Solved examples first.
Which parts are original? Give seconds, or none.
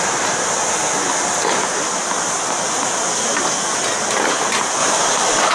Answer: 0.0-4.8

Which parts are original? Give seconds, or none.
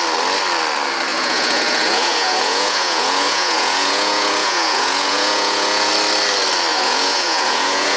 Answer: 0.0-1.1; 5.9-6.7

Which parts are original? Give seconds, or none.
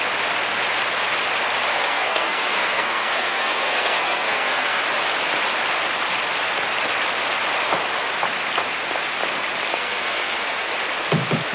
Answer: 0.0-1.7; 4.8-9.7; 10.7-11.5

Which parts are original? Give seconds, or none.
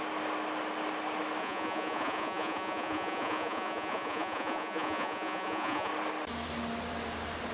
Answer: 0.0-1.4; 5.9-7.5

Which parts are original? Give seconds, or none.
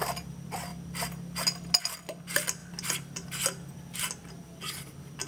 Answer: 0.0-5.3